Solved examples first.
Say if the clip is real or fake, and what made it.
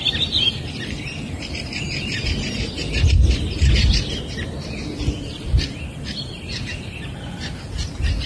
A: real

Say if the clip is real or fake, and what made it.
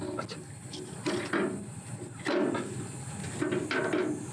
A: real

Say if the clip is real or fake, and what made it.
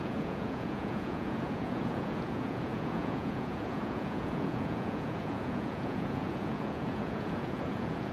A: fake, vocoder, Vocos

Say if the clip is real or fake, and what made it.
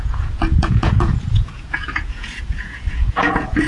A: fake, vocoder, Vocos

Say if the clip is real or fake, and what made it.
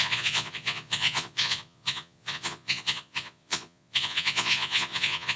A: fake, vocoder, Vocos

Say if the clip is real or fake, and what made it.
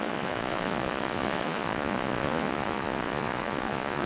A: fake, vocoder, Vocos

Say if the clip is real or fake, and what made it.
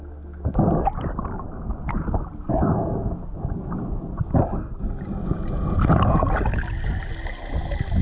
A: real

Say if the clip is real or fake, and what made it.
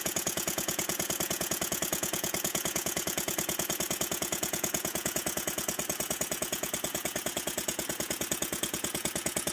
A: fake, vocoder, Vocos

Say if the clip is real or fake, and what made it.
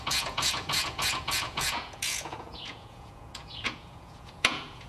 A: fake, vocoder, Vocos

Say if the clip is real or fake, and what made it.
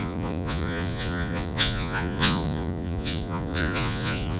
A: fake, vocoder, Vocos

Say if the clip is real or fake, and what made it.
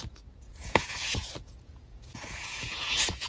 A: fake, vocoder, Vocos